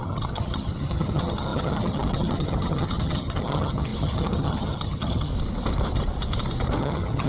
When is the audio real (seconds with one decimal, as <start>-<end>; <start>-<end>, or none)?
5.3-6.8